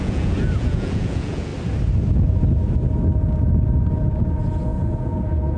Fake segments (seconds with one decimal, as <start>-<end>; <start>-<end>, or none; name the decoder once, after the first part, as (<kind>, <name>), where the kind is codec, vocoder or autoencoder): 0.0-1.5 (vocoder, Vocos); 3.9-5.6